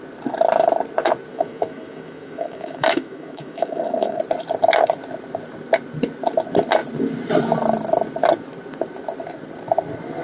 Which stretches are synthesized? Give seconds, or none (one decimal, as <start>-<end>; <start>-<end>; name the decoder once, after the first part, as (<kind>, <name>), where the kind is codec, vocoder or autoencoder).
1.3-4.2 (autoencoder, DAC-VAE)